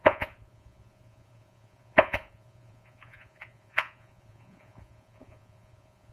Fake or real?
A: fake